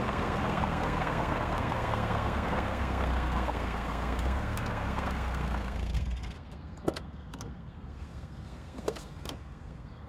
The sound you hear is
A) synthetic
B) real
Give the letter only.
A